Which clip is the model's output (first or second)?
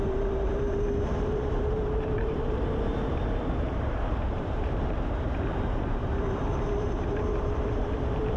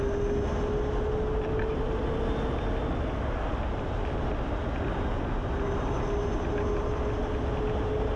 first